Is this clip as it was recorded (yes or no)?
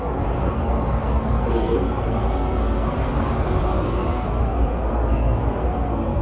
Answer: no